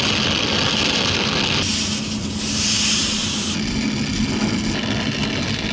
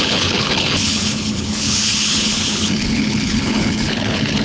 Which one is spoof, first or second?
second